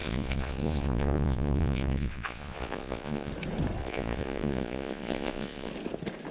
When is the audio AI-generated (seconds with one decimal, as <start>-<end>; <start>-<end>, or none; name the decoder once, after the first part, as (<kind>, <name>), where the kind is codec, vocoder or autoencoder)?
0.0-3.3 (vocoder, Vocos); 3.8-5.7